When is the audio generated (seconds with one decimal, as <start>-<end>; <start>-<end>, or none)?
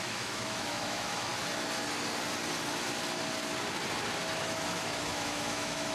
0.0-1.3; 4.3-5.9